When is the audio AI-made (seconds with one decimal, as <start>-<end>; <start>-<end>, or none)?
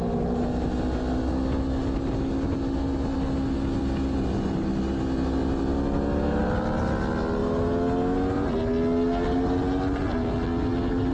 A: none